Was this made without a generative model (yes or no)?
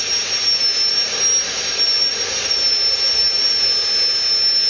yes